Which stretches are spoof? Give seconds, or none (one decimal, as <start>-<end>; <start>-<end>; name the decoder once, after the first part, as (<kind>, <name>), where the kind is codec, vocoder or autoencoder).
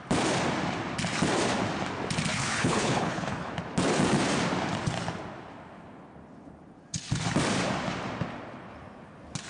2.3-3.5 (codec, HILCodec)